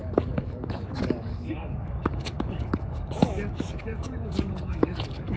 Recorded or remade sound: remade